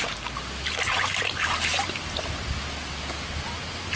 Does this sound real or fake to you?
real